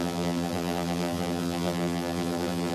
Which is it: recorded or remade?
remade